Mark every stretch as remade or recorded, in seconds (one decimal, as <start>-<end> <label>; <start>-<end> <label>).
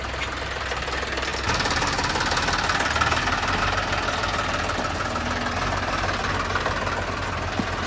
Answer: 0.0-7.9 recorded